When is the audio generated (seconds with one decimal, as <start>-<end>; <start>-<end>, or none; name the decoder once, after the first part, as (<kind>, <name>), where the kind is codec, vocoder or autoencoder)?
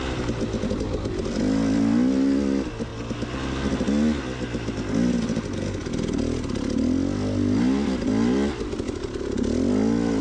none